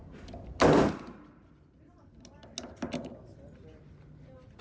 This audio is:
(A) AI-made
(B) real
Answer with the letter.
B